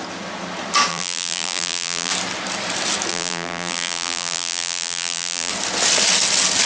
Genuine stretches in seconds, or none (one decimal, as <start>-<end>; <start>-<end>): 0.0-0.9; 2.1-3.1; 5.5-6.7